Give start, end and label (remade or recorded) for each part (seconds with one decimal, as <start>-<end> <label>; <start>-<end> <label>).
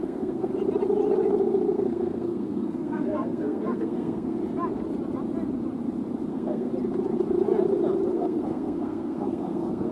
0.0-0.5 remade; 0.5-1.7 recorded; 1.7-4.4 remade; 4.4-6.3 recorded; 6.3-6.7 remade; 6.7-8.1 recorded; 8.1-9.9 remade